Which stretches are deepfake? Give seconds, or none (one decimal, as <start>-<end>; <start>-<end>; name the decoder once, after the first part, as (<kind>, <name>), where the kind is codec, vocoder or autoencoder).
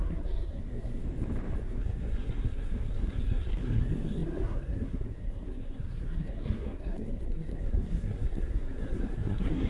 0.0-1.0 (codec, SNAC); 1.6-9.7